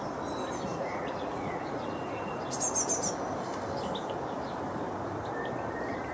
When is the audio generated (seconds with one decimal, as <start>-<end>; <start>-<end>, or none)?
0.7-2.4